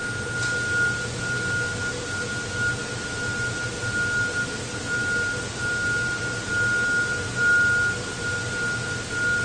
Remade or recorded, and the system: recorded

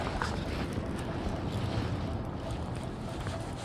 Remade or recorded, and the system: recorded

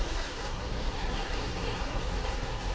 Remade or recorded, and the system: remade, codec, SNAC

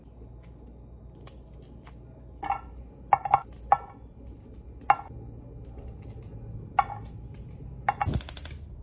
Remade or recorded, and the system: recorded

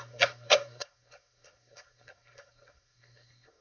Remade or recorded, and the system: remade, codec, SNAC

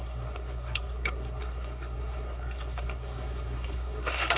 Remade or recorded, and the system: remade, codec, SNAC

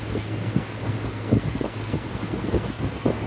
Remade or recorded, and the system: remade, codec, SNAC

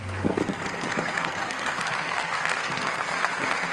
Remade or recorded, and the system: remade, codec, SNAC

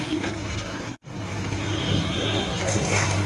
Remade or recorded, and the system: remade, codec, SNAC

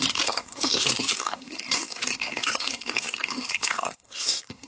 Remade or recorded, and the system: remade, codec, SNAC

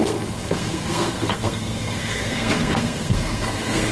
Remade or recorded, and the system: remade, codec, SNAC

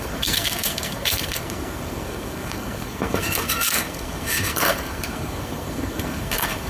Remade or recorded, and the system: remade, codec, SNAC